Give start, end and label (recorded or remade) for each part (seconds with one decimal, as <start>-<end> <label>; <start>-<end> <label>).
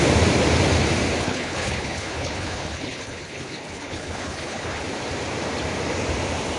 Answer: 0.0-1.2 recorded; 1.2-4.8 remade; 4.8-6.6 recorded